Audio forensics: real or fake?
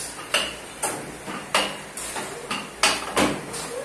real